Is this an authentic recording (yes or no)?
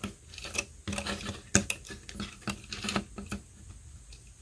yes